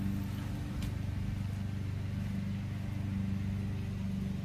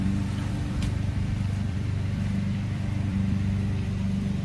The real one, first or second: first